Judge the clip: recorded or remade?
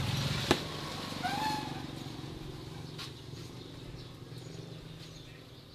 recorded